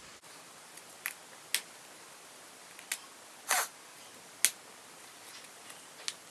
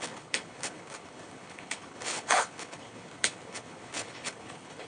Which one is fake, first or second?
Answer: second